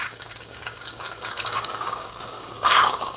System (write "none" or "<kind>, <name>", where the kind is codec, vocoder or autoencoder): codec, DAC